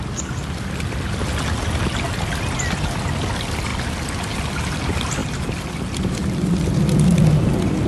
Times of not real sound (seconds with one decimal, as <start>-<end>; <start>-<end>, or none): none